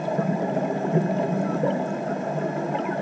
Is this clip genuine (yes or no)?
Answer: yes